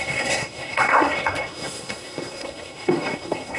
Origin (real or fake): fake